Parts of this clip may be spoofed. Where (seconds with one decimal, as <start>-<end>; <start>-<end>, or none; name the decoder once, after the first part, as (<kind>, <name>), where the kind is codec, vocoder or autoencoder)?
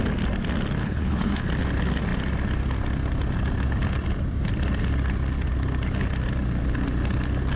0.8-1.4 (codec, HILCodec)